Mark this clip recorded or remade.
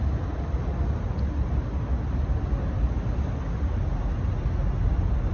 recorded